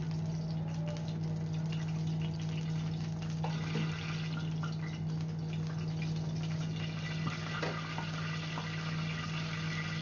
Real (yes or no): yes